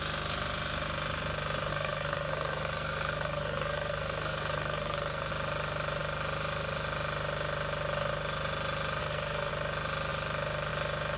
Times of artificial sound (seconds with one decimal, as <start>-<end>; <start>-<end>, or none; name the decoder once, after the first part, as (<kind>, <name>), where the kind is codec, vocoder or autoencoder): 1.7-5.3 (codec, SNAC); 9.0-9.5